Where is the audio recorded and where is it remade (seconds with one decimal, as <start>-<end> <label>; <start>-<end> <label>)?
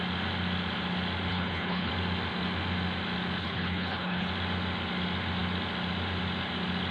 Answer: 0.0-1.3 recorded; 1.3-1.9 remade; 1.9-3.4 recorded; 3.4-4.3 remade; 4.3-6.9 recorded